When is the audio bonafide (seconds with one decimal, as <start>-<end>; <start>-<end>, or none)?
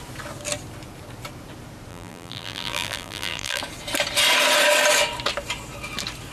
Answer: 0.0-1.9; 3.6-6.3